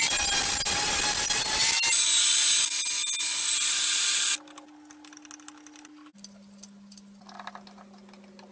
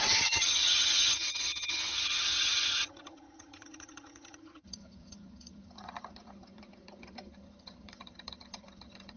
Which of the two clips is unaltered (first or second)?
first